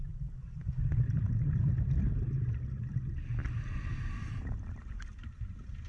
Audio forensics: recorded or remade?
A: recorded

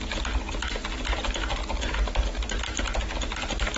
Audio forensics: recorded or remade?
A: recorded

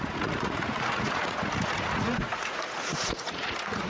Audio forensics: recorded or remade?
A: remade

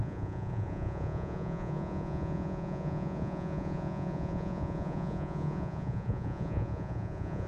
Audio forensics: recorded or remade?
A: remade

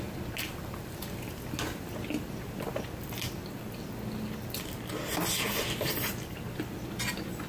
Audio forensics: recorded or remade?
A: recorded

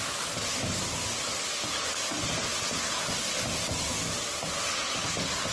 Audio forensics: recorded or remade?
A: recorded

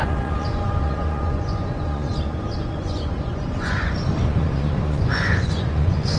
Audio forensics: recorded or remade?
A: remade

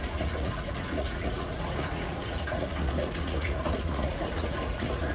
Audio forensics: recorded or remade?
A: remade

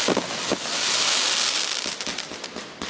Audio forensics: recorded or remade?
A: recorded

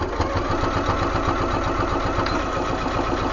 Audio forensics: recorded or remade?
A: recorded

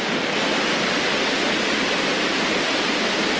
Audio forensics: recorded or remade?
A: recorded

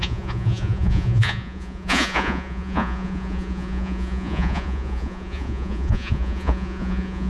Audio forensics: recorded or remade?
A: remade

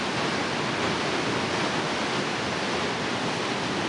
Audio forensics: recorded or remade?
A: recorded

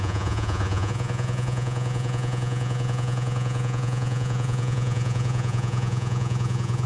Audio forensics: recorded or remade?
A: remade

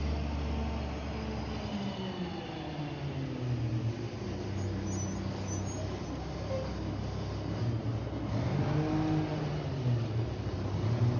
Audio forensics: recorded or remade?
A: recorded